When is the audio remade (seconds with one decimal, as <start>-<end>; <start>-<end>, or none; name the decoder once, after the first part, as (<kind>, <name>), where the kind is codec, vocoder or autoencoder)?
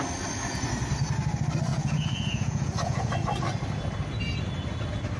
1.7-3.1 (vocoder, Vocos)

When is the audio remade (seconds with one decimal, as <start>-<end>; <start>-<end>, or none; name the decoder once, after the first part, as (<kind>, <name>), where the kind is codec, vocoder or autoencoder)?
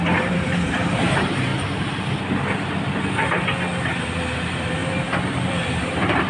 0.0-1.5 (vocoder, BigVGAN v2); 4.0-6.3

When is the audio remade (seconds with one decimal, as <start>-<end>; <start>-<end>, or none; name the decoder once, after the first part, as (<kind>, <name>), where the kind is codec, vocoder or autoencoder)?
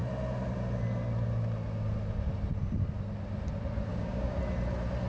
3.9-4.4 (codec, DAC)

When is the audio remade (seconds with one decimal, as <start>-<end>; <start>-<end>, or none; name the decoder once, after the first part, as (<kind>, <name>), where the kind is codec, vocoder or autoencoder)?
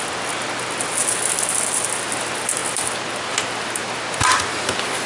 none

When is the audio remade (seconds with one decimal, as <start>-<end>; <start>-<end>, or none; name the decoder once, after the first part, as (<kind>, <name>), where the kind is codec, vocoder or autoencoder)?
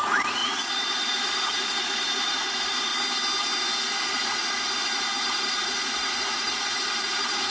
0.0-2.9 (vocoder, Vocos); 4.1-7.5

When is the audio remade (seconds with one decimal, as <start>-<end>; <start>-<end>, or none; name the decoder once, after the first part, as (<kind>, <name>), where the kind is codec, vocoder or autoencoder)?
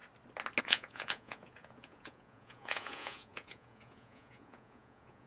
0.6-5.3 (vocoder, Vocos)